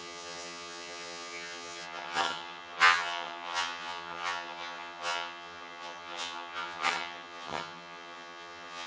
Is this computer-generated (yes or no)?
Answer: yes